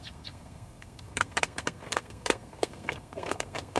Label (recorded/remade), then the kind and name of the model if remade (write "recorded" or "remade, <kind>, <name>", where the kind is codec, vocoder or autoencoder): remade, codec, SNAC